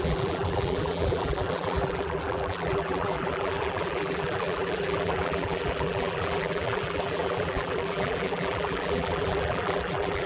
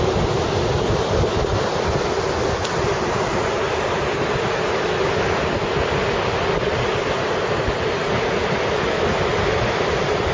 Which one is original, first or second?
second